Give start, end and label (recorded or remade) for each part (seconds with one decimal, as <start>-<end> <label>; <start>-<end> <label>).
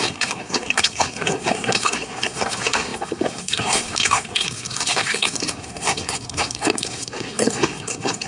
0.0-8.3 remade